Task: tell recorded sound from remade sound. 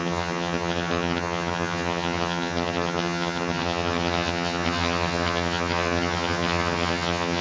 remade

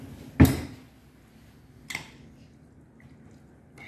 recorded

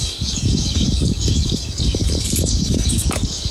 remade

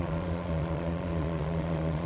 remade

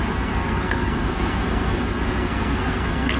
remade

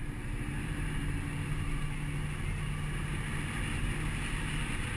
recorded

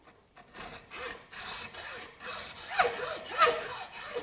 recorded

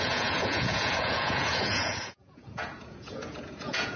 remade